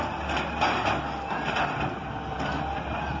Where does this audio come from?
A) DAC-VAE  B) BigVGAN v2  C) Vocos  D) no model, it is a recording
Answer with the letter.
D